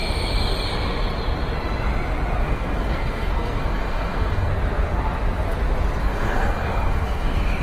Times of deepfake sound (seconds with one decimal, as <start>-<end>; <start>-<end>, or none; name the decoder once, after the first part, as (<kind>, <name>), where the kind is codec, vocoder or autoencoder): 2.4-4.5 (codec, SNAC); 6.0-7.6